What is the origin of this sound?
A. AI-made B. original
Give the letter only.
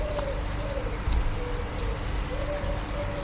B